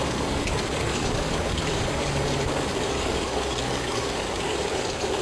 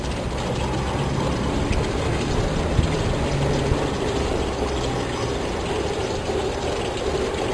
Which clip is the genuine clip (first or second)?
second